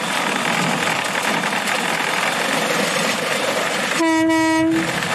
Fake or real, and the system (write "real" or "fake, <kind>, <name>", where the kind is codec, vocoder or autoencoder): real